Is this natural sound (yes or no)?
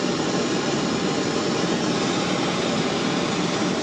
no